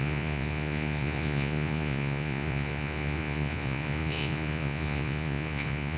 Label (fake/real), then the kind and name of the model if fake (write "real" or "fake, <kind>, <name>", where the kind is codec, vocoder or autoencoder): fake, vocoder, Vocos